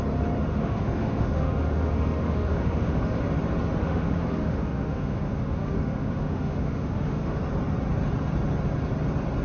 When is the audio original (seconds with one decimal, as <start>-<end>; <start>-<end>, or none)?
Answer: 0.0-0.5; 3.2-3.8; 7.4-9.4